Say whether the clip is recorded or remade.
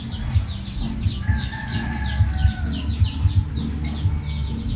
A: recorded